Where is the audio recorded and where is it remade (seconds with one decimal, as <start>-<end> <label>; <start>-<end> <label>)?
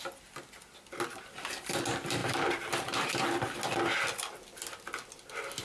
0.0-5.6 recorded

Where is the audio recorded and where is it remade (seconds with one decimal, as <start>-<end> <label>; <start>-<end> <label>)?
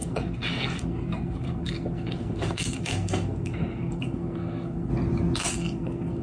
0.0-4.9 remade; 4.9-5.4 recorded; 5.4-6.2 remade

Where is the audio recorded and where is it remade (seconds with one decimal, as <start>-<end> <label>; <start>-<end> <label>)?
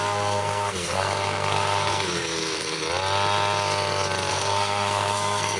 0.0-2.8 remade; 2.8-4.3 recorded; 4.3-5.6 remade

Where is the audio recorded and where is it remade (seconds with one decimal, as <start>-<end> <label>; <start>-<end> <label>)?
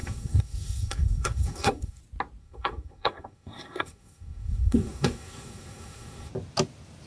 0.0-2.0 remade; 2.0-2.4 recorded; 2.4-6.3 remade; 6.3-7.1 recorded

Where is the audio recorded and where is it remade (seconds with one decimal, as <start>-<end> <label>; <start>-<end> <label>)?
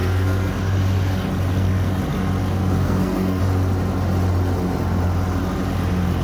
0.0-0.6 remade; 0.6-1.5 recorded; 1.5-2.0 remade; 2.0-2.4 recorded; 2.4-3.4 remade; 3.4-6.2 recorded